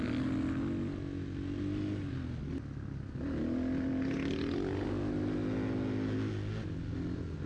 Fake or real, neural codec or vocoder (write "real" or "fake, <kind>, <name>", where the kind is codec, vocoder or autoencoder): real